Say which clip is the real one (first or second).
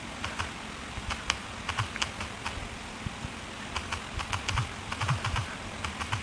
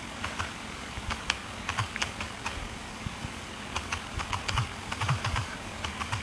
first